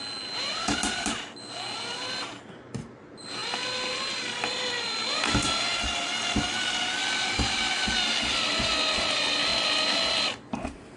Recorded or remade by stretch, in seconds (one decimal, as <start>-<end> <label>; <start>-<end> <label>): 0.0-11.0 recorded